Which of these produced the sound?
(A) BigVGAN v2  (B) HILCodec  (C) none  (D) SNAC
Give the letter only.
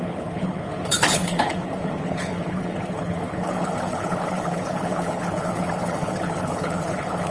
B